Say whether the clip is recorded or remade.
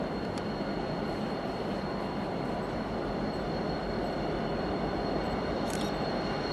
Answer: remade